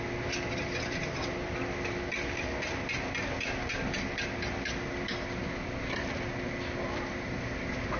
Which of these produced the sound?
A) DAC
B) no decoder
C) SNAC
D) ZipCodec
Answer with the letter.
B